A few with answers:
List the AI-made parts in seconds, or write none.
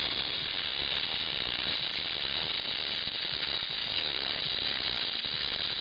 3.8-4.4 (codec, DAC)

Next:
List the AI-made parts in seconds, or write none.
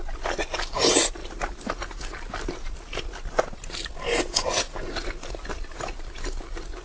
none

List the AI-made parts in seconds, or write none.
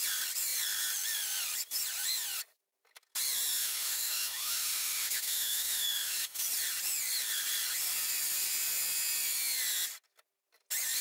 3.6-6.4 (autoencoder, DAC-VAE)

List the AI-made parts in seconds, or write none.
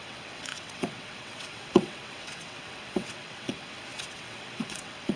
0.0-5.2 (vocoder, WaveNeXt)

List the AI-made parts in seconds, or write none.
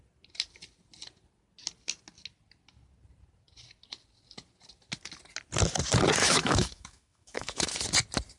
6.2-7.7 (autoencoder, DAC-VAE)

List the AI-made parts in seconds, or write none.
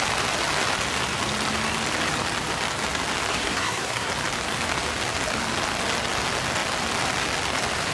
3.3-4.1 (codec, SNAC)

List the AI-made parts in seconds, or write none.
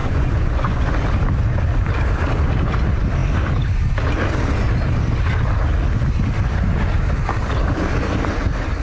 0.0-1.0 (vocoder, Vocos)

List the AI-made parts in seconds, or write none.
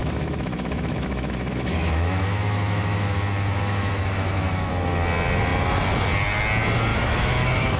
0.0-4.7 (autoencoder, DAC-VAE); 6.9-7.8